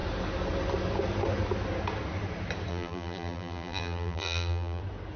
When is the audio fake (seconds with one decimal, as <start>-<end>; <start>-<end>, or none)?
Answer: 2.7-4.8